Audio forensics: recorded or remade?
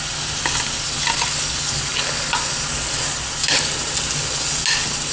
recorded